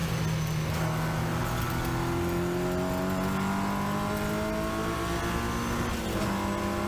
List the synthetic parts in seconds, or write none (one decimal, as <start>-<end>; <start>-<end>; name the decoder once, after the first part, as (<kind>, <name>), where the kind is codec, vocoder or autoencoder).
none